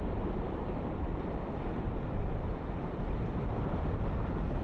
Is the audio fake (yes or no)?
no